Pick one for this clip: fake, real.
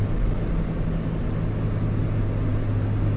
real